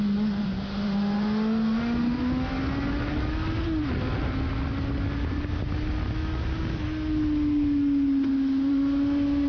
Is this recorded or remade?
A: recorded